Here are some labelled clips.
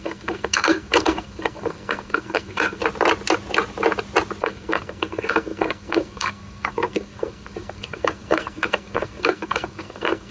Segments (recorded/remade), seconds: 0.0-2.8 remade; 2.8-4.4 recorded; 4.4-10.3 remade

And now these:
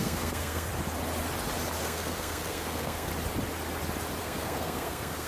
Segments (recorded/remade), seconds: 0.0-0.7 remade; 0.7-1.8 recorded; 1.8-3.1 remade; 3.1-4.2 recorded; 4.2-5.3 remade

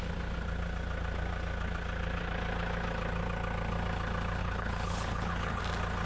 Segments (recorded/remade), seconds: 0.0-4.4 recorded; 4.4-5.6 remade; 5.6-6.1 recorded